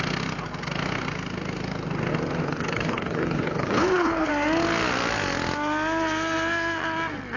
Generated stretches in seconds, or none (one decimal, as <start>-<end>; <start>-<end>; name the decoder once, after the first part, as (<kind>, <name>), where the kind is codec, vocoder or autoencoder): 2.4-4.3 (codec, HILCodec)